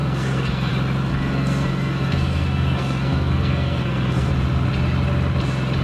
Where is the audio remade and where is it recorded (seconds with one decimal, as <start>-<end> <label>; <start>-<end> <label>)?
0.0-0.7 remade; 0.7-1.1 recorded; 1.1-4.3 remade; 4.3-5.8 recorded